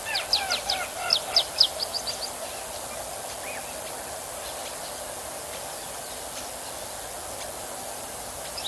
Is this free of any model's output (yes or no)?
yes